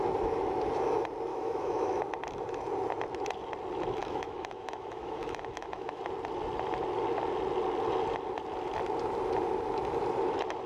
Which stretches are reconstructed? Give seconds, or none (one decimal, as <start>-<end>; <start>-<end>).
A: 1.3-2.0; 4.0-6.0